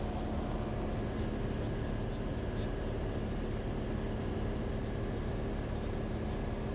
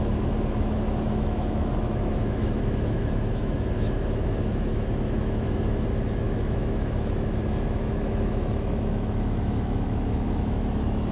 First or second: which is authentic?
first